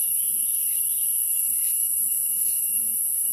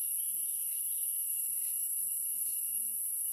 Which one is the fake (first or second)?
first